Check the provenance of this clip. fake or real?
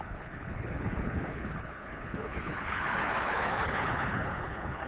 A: fake